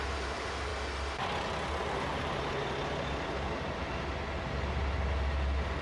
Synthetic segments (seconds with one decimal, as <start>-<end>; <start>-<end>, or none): none